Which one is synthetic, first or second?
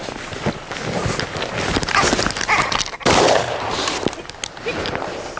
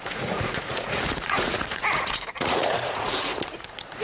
second